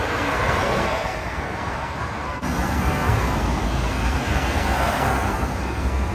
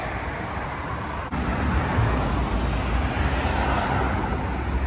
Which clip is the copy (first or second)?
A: first